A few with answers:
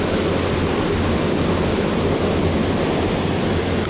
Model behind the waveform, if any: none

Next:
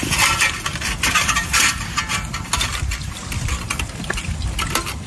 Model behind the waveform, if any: vocoder, BigVGAN v2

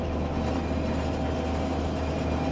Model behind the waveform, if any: none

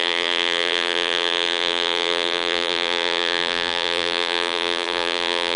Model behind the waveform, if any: vocoder, BigVGAN v2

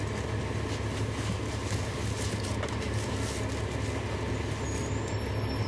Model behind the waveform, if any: none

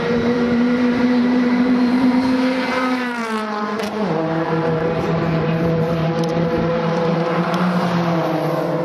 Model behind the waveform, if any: vocoder, BigVGAN v2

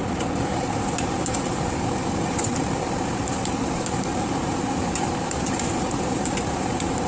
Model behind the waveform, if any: vocoder, BigVGAN v2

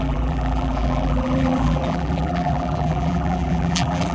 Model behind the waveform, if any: vocoder, BigVGAN v2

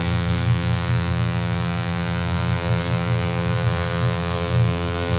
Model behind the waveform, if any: vocoder, BigVGAN v2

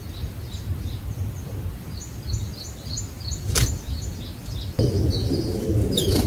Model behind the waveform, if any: none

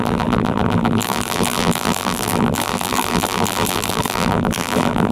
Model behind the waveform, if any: vocoder, BigVGAN v2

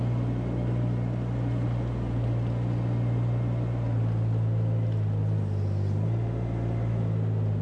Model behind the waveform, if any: none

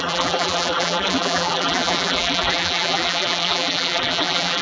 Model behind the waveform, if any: vocoder, BigVGAN v2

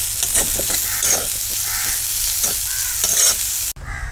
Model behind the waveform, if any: none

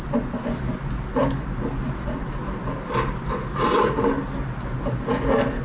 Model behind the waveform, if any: none